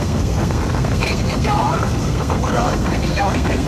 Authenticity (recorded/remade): remade